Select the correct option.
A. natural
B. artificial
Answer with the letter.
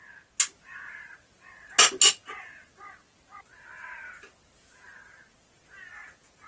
A